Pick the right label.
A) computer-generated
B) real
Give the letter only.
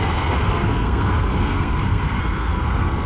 A